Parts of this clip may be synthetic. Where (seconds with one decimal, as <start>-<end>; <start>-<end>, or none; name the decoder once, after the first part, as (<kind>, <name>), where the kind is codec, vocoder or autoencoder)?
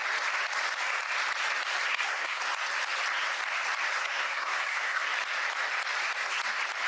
1.9-2.4 (codec, SNAC); 4.0-5.1